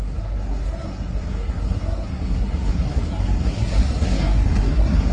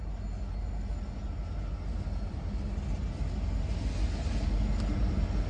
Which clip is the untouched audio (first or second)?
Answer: second